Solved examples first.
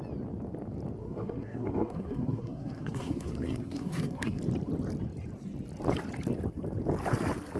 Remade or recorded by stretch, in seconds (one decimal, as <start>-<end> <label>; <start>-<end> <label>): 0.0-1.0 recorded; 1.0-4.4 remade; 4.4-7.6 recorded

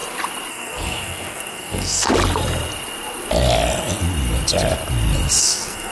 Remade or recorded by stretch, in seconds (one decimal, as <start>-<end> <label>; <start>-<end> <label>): 0.0-0.5 recorded; 0.5-2.1 remade; 2.1-5.4 recorded; 5.4-5.9 remade

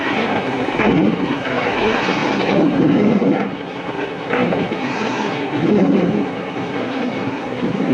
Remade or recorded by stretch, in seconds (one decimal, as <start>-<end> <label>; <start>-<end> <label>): 0.0-7.9 remade